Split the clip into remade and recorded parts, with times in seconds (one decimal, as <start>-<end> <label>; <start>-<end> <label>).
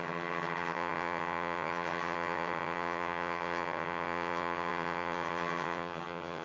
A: 0.0-6.4 remade